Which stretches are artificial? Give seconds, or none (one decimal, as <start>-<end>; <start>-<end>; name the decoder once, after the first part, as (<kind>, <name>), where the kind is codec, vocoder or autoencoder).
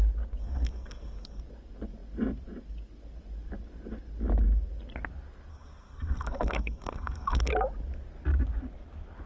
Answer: 0.4-1.4 (codec, SNAC); 5.5-7.5